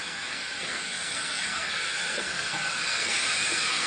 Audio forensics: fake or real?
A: fake